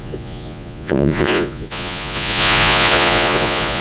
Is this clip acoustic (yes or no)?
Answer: no